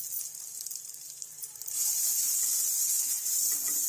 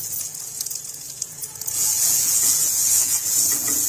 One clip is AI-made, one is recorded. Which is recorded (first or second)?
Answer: first